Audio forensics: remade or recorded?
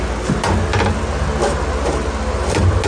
recorded